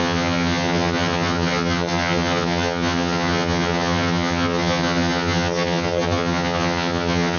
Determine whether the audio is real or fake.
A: fake